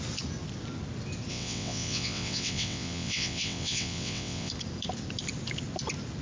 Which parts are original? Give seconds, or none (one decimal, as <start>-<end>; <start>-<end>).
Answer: 0.0-1.3; 4.5-6.2